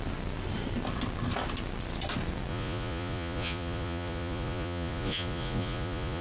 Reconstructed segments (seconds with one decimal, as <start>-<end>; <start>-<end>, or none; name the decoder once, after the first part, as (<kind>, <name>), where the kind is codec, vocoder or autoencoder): 2.5-6.2 (vocoder, Vocos)